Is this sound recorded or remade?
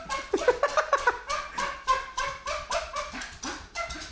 recorded